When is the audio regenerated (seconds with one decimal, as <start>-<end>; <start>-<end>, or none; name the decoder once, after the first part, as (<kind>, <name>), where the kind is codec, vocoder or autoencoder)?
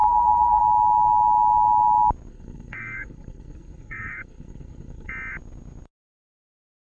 0.0-0.6 (codec, SNAC); 2.3-5.1